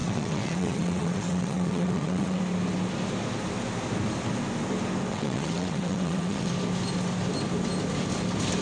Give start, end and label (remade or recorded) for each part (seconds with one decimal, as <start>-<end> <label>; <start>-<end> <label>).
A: 0.0-2.4 remade; 2.4-5.1 recorded; 5.1-6.5 remade; 6.5-8.6 recorded